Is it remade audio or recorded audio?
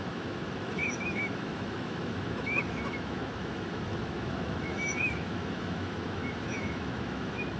remade